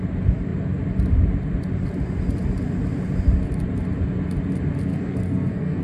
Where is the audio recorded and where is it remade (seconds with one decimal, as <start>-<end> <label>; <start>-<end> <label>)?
0.0-4.9 recorded; 4.9-5.8 remade